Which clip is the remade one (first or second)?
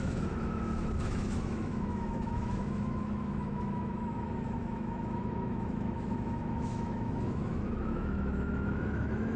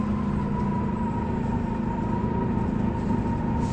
first